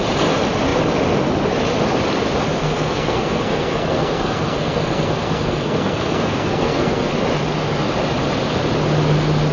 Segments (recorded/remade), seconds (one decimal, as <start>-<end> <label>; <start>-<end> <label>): 0.0-2.6 recorded; 2.6-7.1 remade; 7.1-9.5 recorded